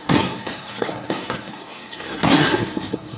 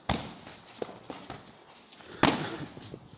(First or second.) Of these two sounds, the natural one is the second